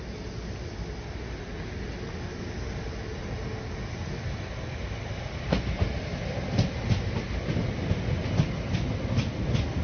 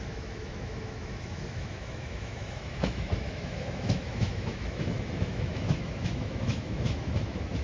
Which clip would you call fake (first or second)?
second